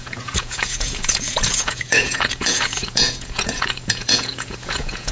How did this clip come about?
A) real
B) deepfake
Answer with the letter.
B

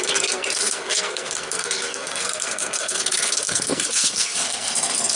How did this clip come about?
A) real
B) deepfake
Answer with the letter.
B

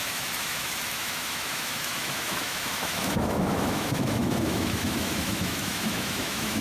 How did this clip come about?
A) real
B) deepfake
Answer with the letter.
B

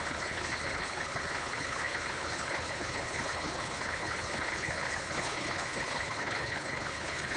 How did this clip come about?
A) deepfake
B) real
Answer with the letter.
A